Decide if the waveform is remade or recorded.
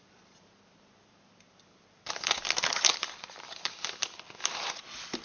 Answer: remade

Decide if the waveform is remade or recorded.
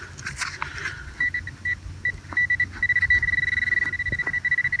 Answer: recorded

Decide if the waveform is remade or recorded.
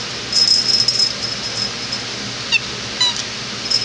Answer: recorded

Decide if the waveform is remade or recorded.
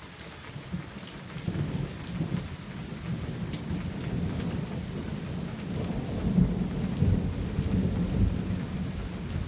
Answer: recorded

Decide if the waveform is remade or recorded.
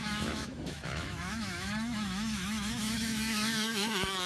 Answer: remade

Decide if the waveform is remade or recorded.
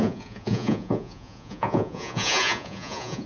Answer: remade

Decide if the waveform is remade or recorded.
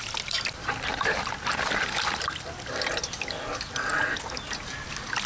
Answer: recorded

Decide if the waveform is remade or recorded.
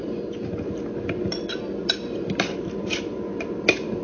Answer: recorded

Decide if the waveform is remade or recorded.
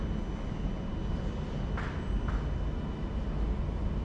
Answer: recorded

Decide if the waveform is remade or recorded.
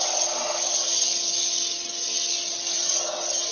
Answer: recorded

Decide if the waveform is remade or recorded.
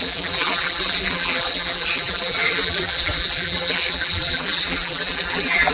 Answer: remade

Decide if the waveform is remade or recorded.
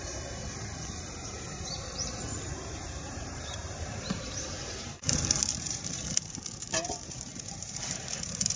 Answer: remade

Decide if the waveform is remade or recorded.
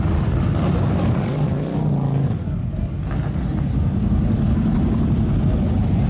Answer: recorded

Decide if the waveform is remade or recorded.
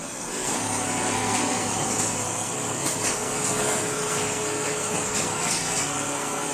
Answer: remade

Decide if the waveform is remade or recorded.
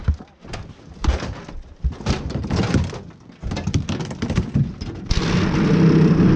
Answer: recorded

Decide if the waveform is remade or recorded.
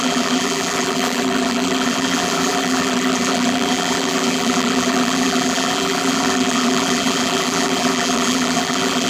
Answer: remade